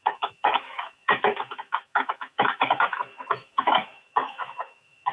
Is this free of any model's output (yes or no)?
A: no